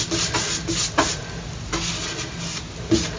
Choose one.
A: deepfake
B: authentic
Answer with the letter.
B